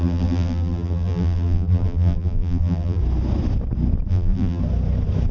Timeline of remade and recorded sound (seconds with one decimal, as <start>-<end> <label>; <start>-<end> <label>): 0.0-3.0 remade; 3.0-4.1 recorded; 4.1-4.6 remade; 4.6-5.3 recorded